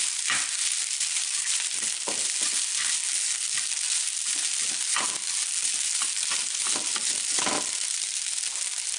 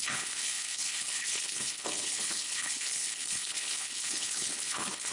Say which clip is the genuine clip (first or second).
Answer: first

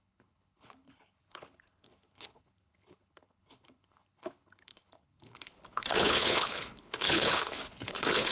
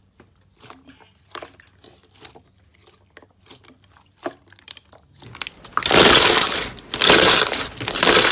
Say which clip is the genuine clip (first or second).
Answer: second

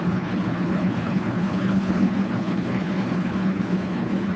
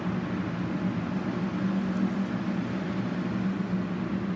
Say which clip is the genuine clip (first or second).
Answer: second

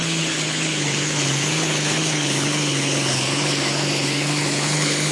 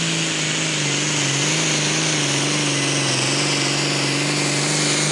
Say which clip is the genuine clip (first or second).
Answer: second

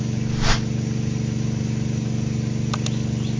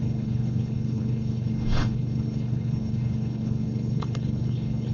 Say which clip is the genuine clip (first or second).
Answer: first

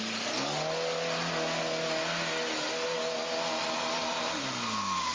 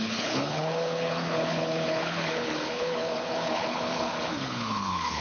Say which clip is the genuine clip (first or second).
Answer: first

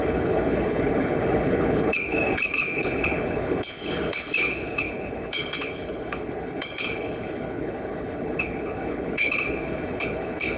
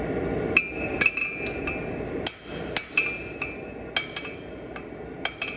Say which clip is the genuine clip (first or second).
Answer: second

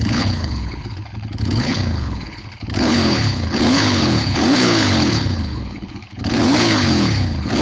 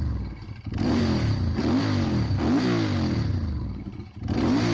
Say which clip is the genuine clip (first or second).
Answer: second